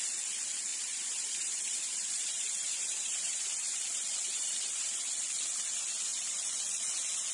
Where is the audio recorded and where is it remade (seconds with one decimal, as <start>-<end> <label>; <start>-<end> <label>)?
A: 0.0-0.7 recorded; 0.7-5.1 remade; 5.1-7.3 recorded